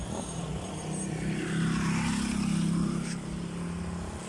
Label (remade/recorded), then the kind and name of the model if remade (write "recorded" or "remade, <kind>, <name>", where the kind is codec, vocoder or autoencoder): recorded